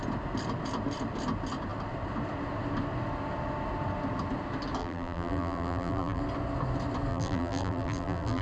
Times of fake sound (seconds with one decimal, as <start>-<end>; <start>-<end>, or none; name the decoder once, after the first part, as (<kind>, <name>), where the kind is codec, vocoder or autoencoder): 4.8-6.2 (vocoder, BigVGAN v2); 7.1-8.4

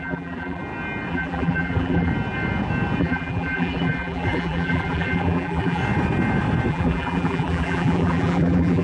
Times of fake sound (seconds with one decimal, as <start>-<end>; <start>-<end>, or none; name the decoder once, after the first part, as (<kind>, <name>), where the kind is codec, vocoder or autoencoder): 0.0-0.6 (vocoder, BigVGAN v2); 1.1-2.1; 3.0-5.8; 6.7-8.8

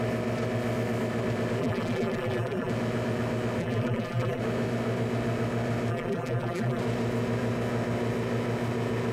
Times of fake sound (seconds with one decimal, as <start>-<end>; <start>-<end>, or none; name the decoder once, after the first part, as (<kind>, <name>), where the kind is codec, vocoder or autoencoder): 1.6-2.7 (vocoder, BigVGAN v2); 3.6-4.4; 5.9-6.8